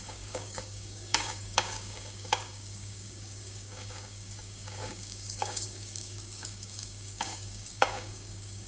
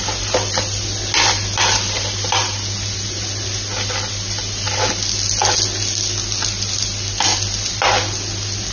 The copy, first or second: first